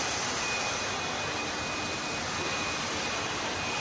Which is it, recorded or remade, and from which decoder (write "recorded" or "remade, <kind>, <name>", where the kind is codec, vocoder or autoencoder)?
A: recorded